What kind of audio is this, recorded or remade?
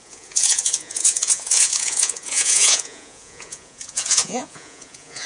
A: remade